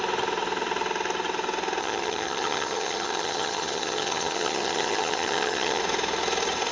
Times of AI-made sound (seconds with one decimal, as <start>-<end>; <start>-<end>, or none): 1.8-5.8